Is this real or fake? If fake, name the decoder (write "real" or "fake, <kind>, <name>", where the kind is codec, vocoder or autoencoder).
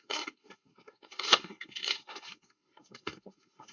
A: fake, codec, SNAC